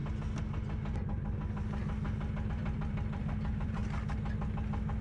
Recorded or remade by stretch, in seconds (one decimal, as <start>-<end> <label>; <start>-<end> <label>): 0.0-2.5 recorded; 2.5-3.8 remade; 3.8-5.0 recorded